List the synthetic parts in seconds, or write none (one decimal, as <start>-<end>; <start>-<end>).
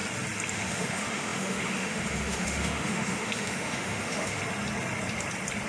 0.5-4.4